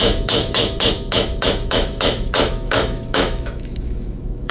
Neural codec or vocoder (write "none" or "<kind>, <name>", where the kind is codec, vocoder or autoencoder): autoencoder, DAC-VAE